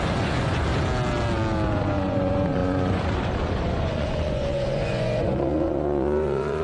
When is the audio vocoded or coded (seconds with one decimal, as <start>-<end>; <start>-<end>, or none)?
0.0-0.7; 1.7-6.6